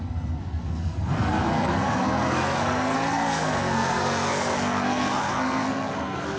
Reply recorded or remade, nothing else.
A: remade